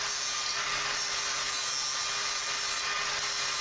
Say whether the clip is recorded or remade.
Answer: recorded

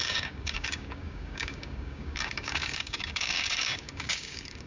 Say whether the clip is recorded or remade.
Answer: remade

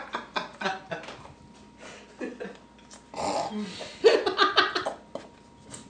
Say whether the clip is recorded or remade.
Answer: recorded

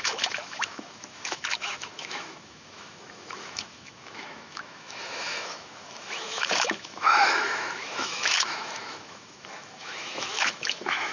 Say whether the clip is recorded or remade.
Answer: remade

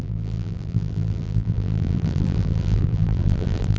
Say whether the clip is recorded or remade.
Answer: remade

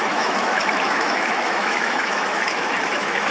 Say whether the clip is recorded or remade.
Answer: remade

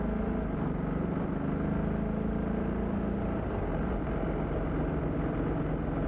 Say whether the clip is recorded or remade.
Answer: recorded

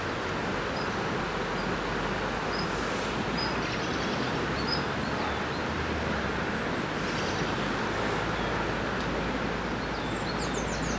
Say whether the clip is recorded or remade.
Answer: recorded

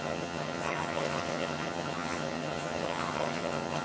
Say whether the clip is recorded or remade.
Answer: remade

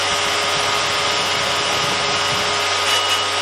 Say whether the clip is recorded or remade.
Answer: recorded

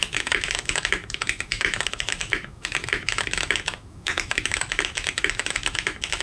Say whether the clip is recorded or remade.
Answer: remade